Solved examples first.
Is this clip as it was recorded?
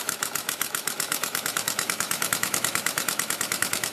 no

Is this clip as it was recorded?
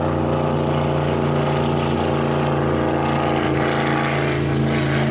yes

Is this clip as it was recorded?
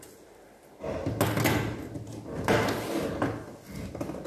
yes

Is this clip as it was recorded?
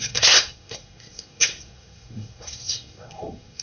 no